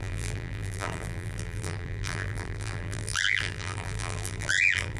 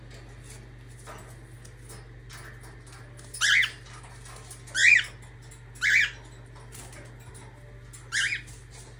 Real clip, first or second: second